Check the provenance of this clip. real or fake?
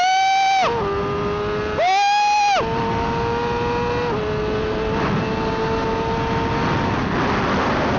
real